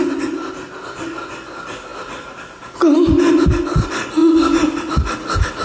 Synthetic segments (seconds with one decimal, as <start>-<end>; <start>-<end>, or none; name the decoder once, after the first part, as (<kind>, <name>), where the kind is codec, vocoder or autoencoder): none